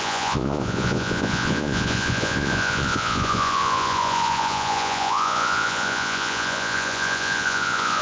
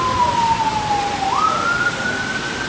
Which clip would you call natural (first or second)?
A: second